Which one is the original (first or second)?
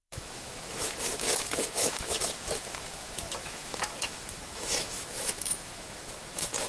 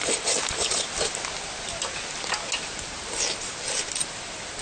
second